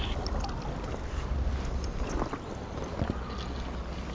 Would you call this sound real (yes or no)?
yes